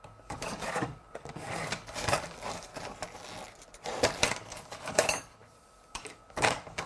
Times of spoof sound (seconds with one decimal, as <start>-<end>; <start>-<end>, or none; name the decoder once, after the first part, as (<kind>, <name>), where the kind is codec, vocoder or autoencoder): 0.0-2.7 (codec, DAC); 4.3-6.9